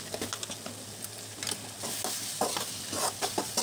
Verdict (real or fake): real